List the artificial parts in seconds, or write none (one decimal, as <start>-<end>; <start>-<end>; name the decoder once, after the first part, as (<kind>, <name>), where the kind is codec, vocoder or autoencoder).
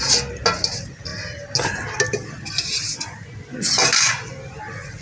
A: none